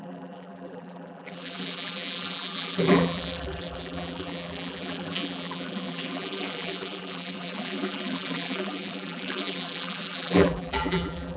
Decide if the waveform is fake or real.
fake